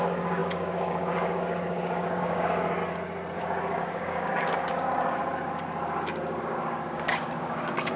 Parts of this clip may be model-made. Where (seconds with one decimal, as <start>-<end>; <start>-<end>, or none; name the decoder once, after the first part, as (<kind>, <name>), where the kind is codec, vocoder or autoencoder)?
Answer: 0.0-2.8 (codec, DAC); 3.8-5.2; 6.4-8.0